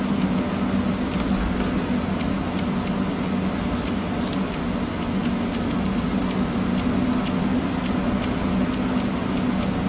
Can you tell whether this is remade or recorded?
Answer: recorded